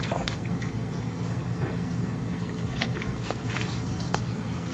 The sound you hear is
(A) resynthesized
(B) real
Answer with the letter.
A